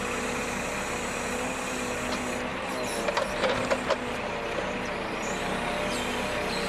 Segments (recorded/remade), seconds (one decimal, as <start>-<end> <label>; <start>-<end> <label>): 0.0-6.7 recorded